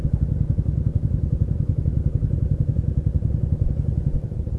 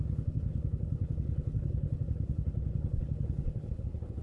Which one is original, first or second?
first